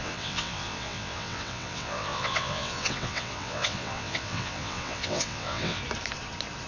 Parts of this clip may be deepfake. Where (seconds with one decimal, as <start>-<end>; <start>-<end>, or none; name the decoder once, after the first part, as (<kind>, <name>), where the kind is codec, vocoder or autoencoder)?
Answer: 0.0-5.8 (vocoder, WaveNeXt)

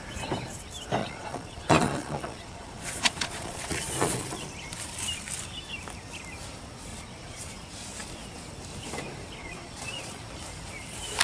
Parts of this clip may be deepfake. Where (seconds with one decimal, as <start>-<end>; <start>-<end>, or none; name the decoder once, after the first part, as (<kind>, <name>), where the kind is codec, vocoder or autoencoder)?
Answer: 1.0-4.5 (vocoder, Vocos); 6.9-7.5; 9.4-10.2